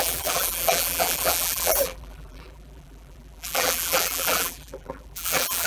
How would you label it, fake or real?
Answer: fake